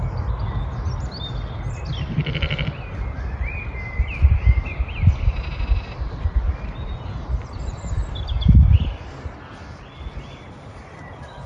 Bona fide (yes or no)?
yes